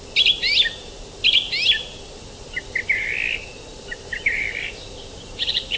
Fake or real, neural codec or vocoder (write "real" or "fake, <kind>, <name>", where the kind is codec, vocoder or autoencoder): real